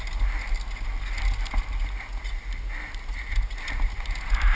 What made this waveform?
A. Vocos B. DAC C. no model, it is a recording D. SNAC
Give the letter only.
C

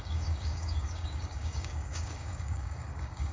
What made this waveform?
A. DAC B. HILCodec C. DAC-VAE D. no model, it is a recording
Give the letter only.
A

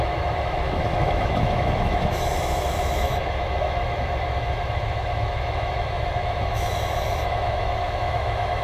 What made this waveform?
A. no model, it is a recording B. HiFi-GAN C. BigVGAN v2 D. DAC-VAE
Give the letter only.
D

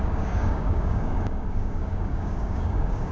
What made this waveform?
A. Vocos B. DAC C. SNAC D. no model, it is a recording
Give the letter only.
B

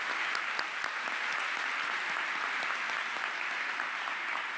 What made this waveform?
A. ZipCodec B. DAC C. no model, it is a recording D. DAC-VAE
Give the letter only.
C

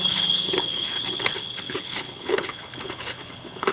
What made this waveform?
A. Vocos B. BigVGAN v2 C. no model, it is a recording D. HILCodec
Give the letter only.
D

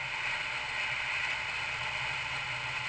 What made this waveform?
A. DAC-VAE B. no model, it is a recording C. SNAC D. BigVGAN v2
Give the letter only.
B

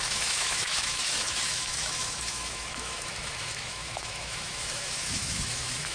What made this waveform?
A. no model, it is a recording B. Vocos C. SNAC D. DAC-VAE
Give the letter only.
D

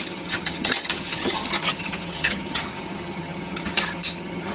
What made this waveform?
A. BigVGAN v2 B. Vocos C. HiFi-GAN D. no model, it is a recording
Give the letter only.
C